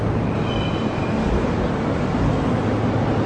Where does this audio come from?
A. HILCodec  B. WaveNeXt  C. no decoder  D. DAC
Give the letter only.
C